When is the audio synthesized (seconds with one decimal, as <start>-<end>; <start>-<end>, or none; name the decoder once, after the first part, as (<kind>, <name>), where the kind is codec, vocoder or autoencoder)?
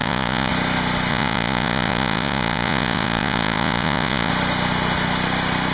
0.0-0.5 (vocoder, Vocos); 1.1-4.3